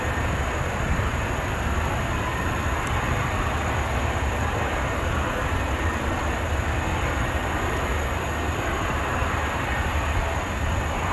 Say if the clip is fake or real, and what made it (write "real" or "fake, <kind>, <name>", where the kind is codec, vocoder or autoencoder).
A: real